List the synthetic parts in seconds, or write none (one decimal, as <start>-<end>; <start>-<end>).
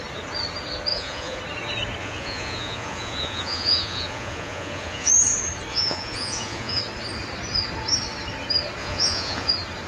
0.9-1.4; 2.0-5.1; 5.7-6.8; 8.8-9.5